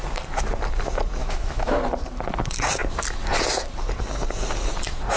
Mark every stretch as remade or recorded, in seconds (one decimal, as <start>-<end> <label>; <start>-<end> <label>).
0.0-1.2 recorded; 1.2-1.8 remade; 1.8-5.2 recorded